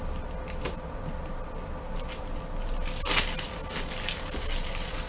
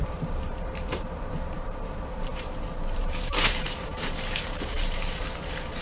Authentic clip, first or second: first